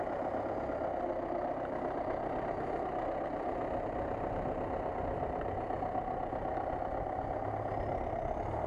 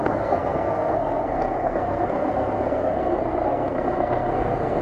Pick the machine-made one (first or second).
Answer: second